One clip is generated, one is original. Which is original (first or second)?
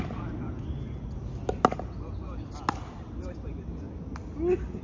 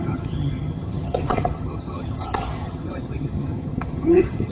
first